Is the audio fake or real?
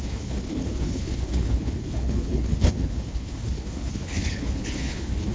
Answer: fake